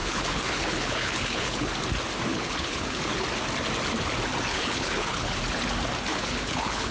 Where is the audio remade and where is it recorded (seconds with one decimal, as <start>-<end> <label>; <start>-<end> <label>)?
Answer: 0.0-1.7 remade; 1.7-2.3 recorded; 2.3-3.1 remade; 3.1-4.5 recorded; 4.5-5.4 remade; 5.4-6.1 recorded; 6.1-6.9 remade